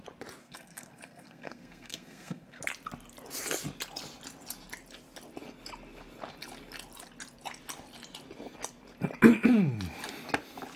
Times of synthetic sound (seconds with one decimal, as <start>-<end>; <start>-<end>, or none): 0.4-2.6